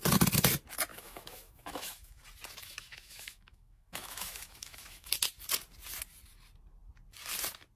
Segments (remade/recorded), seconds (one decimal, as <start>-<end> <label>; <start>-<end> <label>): 0.0-0.9 recorded; 0.9-2.2 remade; 2.2-2.6 recorded; 2.6-5.1 remade; 5.1-7.8 recorded